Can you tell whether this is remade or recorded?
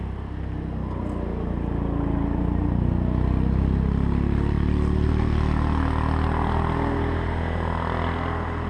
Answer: recorded